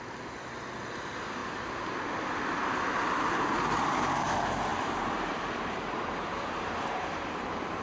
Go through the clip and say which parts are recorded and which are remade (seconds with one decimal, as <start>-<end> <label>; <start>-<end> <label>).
0.0-1.4 recorded; 1.4-1.9 remade; 1.9-4.7 recorded; 4.7-7.2 remade; 7.2-7.8 recorded